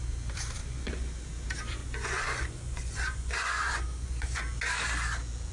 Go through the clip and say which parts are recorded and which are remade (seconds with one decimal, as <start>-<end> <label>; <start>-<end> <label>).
0.0-0.6 recorded; 0.6-1.1 remade; 1.1-1.8 recorded; 1.8-4.4 remade; 4.4-5.5 recorded